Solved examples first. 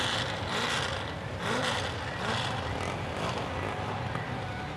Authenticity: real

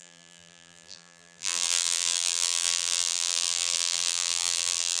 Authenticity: fake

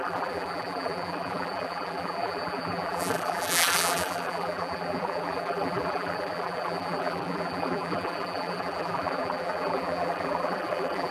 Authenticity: fake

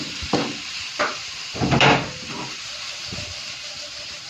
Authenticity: fake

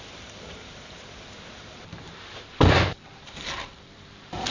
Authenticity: fake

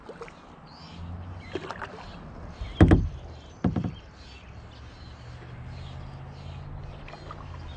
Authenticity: real